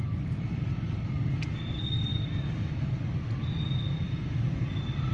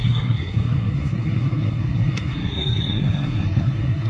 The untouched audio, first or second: first